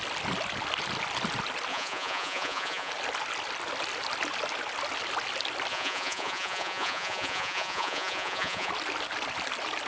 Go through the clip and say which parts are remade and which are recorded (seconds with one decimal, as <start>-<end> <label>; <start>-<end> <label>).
0.0-1.7 recorded; 1.7-2.9 remade; 2.9-5.7 recorded; 5.7-8.7 remade; 8.7-9.9 recorded

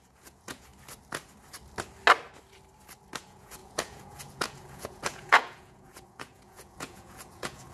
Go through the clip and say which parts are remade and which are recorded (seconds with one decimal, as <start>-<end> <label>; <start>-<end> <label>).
0.0-0.7 remade; 0.7-3.2 recorded; 3.2-7.7 remade

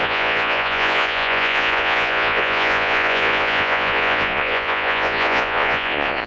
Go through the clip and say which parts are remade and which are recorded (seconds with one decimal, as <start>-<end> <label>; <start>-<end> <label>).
0.0-6.3 remade